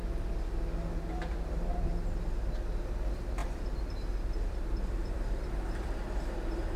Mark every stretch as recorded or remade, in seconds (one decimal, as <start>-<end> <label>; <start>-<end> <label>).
0.0-1.0 recorded; 1.0-1.9 remade; 1.9-2.8 recorded; 2.8-6.8 remade